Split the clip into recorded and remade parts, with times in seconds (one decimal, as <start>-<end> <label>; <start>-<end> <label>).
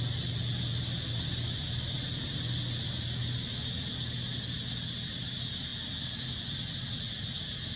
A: 0.0-7.8 recorded